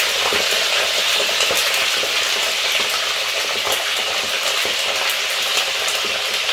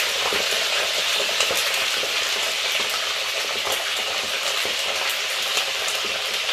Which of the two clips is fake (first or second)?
second